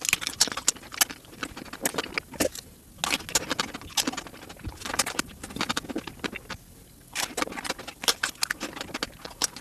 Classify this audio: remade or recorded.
recorded